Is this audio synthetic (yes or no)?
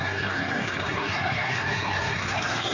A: yes